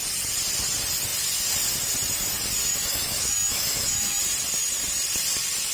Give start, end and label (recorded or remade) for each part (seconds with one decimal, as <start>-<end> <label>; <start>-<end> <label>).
0.0-2.7 recorded; 2.7-4.2 remade; 4.2-5.7 recorded